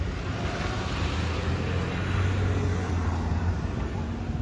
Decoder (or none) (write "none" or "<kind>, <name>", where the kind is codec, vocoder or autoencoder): none